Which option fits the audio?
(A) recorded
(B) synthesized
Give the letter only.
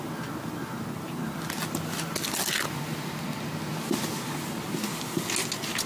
A